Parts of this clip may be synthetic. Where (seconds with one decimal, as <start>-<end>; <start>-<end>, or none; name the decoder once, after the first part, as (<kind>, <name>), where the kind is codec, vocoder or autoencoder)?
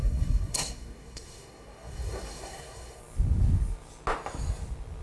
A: 0.0-3.0 (codec, SNAC)